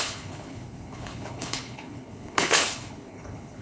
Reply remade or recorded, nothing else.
remade